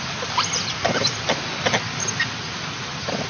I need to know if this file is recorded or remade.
remade